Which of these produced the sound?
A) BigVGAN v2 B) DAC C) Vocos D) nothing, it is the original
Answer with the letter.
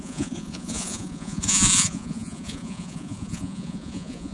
C